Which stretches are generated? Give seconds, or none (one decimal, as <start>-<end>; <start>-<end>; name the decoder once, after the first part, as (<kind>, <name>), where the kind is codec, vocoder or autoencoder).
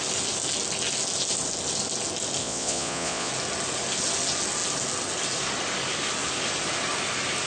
2.4-3.3 (vocoder, Vocos)